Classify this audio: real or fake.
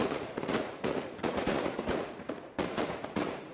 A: fake